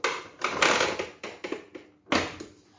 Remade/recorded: recorded